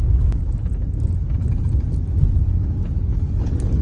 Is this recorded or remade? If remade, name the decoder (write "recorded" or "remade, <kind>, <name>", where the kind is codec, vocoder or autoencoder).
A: recorded